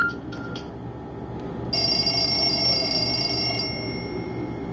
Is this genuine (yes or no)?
yes